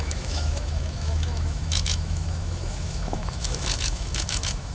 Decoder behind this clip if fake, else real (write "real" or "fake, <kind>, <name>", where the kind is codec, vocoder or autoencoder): fake, autoencoder, DAC-VAE